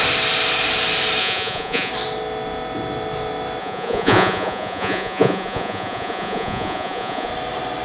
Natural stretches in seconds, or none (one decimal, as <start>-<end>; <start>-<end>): 0.0-1.2; 1.9-3.6; 7.3-7.8